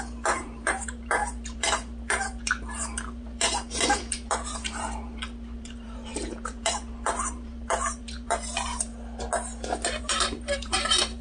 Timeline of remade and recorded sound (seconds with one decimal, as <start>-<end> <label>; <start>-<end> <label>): 0.0-8.9 remade; 8.9-10.0 recorded; 10.0-11.2 remade